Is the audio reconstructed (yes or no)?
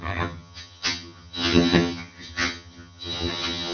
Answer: yes